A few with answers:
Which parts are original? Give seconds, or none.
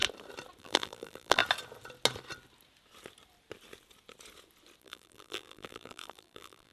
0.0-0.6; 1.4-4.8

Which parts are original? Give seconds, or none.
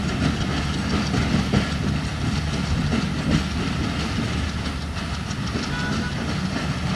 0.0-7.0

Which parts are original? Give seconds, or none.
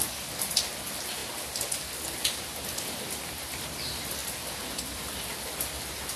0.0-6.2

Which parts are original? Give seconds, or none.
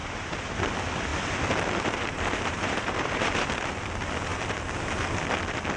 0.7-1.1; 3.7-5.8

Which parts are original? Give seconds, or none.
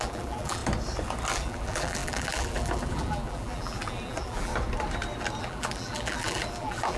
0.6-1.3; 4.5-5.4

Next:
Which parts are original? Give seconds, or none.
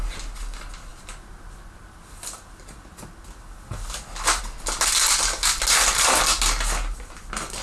0.0-7.6